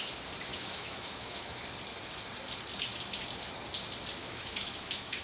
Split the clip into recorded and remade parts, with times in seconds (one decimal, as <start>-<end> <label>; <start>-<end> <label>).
0.0-0.5 recorded; 0.5-1.6 remade; 1.6-4.2 recorded; 4.2-5.2 remade

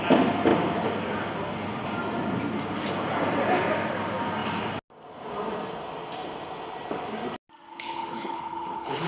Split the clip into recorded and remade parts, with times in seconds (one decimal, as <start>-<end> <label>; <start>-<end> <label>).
0.0-7.7 recorded; 7.7-9.1 remade